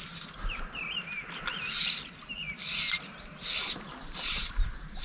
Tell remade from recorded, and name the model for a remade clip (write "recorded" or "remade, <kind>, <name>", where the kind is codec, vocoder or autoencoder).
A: recorded